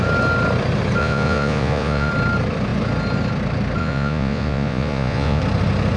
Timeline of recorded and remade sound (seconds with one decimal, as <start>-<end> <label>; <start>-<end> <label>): 0.0-1.0 recorded; 1.0-2.1 remade; 2.1-3.8 recorded; 3.8-5.4 remade; 5.4-6.0 recorded